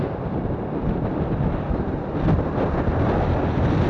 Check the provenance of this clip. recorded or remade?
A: recorded